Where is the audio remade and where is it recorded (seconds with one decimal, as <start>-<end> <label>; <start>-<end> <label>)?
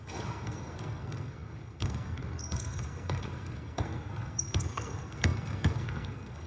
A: 0.0-6.5 remade